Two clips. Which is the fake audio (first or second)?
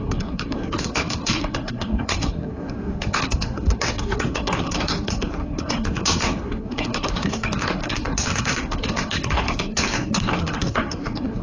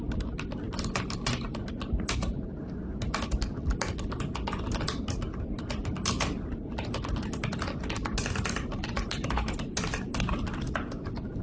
first